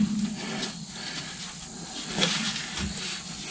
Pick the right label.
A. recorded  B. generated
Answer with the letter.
A